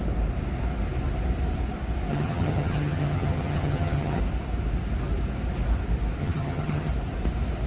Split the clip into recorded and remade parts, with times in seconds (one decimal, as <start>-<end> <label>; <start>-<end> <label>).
0.0-2.1 recorded; 2.1-4.2 remade; 4.2-6.2 recorded; 6.2-6.9 remade; 6.9-7.7 recorded